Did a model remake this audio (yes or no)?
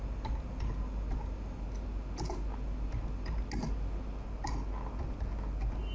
no